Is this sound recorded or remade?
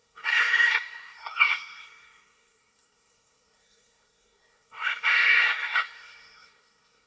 remade